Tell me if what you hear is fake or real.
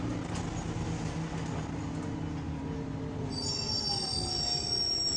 real